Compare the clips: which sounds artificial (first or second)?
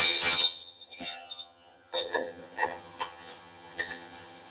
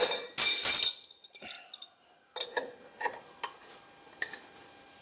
first